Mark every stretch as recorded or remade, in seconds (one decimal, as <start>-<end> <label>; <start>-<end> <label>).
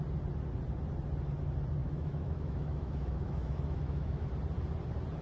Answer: 0.0-1.8 recorded; 1.8-4.3 remade; 4.3-5.2 recorded